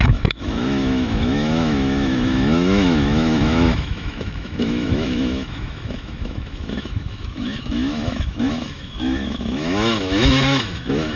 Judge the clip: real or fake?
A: fake